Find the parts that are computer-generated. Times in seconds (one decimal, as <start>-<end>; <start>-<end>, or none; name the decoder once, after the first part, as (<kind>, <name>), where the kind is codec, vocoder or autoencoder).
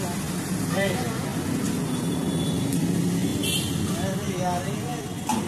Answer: none